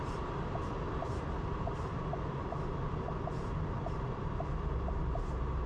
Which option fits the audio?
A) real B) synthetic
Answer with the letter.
A